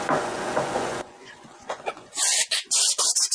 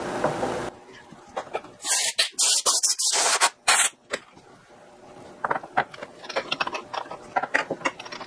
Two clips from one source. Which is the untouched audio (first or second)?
second